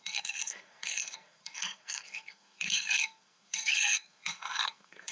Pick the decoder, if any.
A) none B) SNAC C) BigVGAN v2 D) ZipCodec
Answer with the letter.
B